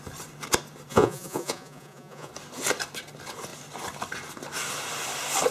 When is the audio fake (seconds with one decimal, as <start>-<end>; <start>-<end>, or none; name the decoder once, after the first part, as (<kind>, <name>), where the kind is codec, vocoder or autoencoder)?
0.9-2.3 (vocoder, Vocos)

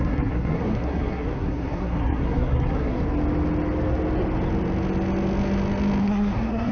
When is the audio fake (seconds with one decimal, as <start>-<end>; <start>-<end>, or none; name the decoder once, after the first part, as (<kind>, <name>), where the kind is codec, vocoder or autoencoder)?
0.0-3.0 (codec, SNAC); 6.0-6.7

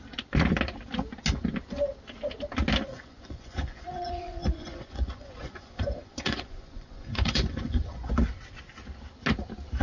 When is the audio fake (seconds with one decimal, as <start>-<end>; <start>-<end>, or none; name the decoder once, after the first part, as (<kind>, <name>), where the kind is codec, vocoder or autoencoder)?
2.9-8.1 (vocoder, Vocos)

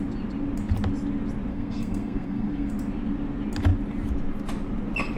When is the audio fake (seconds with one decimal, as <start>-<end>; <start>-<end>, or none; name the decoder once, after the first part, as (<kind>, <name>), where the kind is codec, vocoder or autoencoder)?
1.5-2.7 (codec, SNAC)

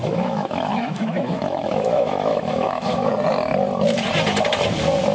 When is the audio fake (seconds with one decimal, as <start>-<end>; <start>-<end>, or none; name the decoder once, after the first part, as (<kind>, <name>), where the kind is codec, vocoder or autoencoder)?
0.0-3.1 (autoencoder, DAC-VAE)